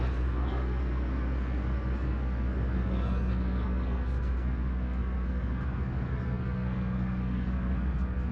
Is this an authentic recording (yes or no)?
no